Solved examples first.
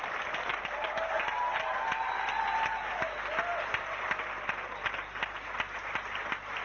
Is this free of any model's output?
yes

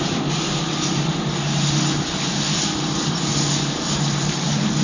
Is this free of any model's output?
yes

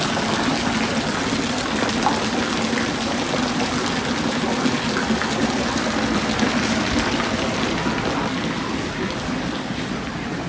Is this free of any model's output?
yes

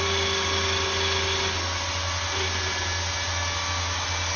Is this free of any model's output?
yes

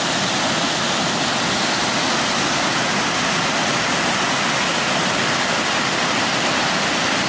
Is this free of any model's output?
yes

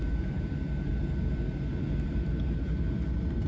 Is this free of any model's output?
yes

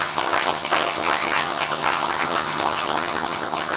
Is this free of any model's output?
no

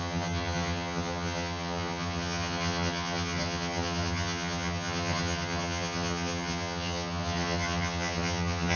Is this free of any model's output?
no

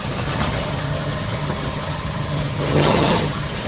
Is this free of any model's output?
no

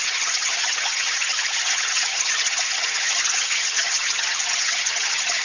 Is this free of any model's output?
no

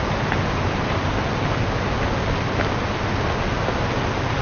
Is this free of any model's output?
yes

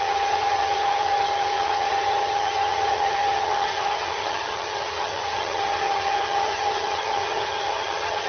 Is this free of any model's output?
no